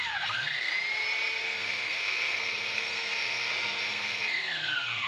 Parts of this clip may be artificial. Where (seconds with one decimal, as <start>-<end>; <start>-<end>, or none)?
0.0-0.7; 1.4-5.1